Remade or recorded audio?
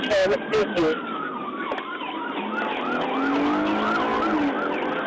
recorded